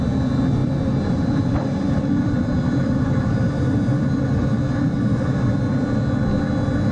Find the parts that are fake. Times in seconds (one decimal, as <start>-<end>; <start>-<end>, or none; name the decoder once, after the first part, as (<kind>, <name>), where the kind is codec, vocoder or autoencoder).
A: 0.6-4.4 (vocoder, BigVGAN v2); 5.1-5.7

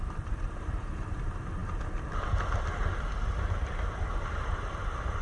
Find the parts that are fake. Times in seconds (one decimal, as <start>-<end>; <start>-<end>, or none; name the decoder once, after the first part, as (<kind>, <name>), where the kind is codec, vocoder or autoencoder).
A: 0.0-1.6 (vocoder, BigVGAN v2); 4.0-5.2

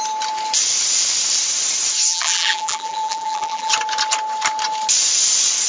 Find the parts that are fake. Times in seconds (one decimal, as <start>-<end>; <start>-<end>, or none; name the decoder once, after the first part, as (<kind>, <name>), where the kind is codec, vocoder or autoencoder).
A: 2.1-3.7 (vocoder, BigVGAN v2)

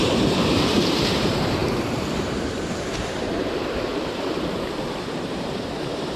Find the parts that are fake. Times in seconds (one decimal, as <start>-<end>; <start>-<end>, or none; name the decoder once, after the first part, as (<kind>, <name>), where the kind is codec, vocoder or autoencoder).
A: 0.0-6.2 (vocoder, BigVGAN v2)

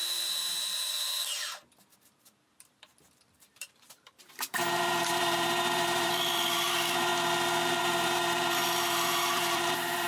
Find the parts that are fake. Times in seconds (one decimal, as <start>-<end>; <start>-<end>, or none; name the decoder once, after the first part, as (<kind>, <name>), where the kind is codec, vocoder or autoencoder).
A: 0.0-1.2 (vocoder, BigVGAN v2); 1.8-7.1; 7.8-10.1

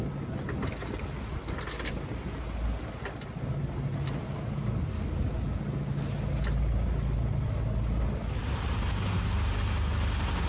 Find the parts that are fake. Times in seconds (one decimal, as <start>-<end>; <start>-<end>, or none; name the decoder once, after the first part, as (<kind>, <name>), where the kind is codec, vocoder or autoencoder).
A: 8.4-8.9 (vocoder, BigVGAN v2)

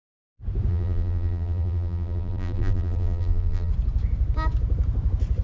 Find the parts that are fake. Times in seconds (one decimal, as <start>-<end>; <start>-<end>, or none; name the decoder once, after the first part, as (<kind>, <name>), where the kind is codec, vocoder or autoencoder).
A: 0.7-3.7 (vocoder, BigVGAN v2)